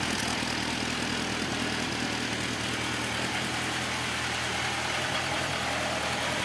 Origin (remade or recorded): recorded